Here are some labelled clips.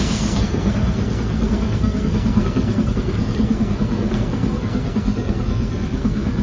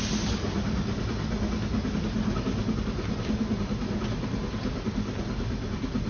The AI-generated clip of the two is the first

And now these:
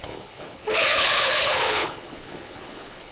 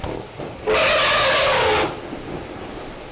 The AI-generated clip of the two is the first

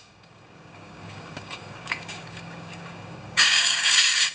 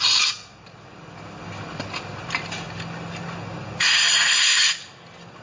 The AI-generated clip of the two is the first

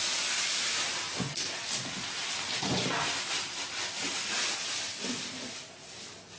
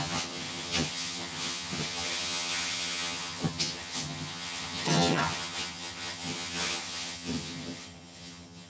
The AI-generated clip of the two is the second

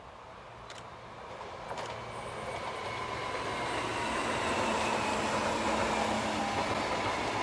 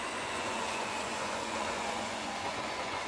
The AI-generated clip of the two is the second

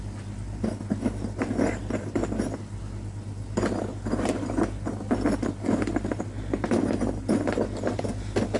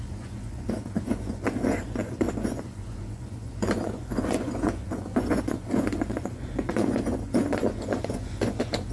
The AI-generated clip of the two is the second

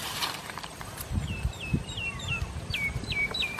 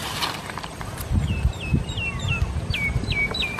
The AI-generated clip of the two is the first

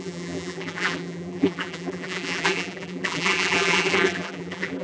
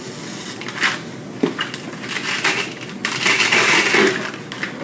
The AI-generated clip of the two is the first